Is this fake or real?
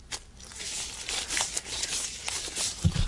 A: real